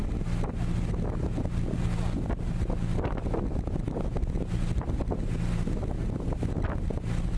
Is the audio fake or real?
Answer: real